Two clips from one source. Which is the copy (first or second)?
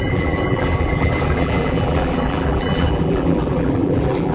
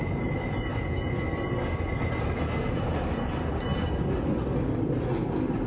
first